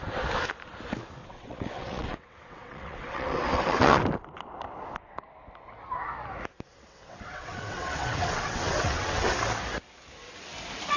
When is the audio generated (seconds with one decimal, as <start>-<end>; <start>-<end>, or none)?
1.2-4.0; 6.7-9.3